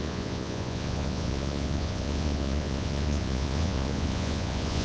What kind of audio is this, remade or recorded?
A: remade